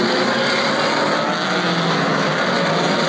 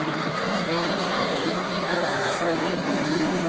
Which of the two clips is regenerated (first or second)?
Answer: second